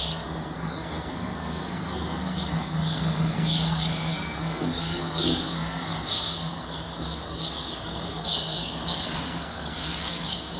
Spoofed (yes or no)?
yes